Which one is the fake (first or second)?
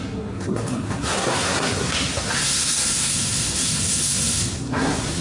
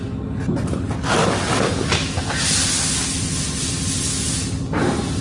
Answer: first